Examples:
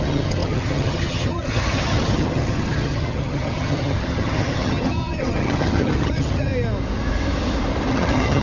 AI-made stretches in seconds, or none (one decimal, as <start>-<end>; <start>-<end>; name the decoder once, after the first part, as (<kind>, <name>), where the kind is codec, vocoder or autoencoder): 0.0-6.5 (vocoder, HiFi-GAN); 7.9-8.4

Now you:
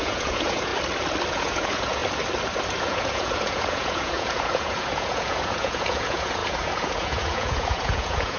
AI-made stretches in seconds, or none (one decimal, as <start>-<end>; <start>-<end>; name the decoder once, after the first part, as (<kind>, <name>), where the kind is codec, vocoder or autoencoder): 0.0-0.7 (vocoder, Vocos); 1.3-2.0; 2.8-8.4

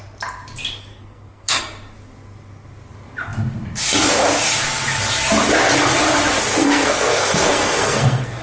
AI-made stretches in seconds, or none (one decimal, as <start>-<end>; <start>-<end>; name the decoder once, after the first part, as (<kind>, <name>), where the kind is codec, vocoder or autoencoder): 0.8-1.6 (codec, SNAC); 6.6-8.4

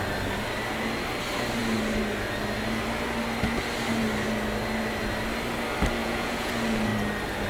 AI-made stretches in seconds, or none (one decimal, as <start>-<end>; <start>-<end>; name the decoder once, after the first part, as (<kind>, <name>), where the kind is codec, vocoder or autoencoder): 6.0-6.5 (vocoder, Vocos)

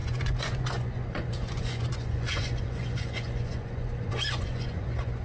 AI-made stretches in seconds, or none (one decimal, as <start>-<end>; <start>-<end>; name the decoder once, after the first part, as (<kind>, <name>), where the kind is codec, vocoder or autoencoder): 0.0-5.2 (vocoder, Vocos)

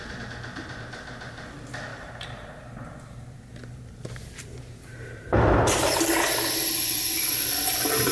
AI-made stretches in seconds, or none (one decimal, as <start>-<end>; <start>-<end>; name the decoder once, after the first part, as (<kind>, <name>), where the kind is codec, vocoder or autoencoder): 0.0-0.8 (vocoder, BigVGAN v2); 1.9-2.5; 3.6-5.9

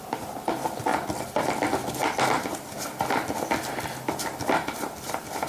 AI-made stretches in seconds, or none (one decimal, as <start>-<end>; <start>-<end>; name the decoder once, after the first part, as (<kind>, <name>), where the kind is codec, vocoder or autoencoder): none